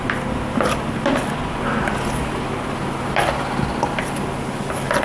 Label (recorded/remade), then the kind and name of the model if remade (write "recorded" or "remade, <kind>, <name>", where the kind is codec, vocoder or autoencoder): recorded